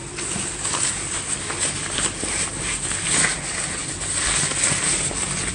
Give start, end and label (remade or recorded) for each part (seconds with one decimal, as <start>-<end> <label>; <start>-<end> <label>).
0.0-5.5 recorded